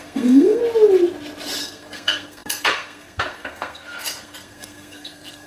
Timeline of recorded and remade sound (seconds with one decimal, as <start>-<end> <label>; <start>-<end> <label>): 0.0-0.6 remade; 0.6-1.6 recorded; 1.6-5.5 remade